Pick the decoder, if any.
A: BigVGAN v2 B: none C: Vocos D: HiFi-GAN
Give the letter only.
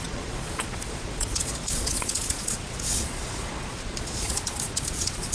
C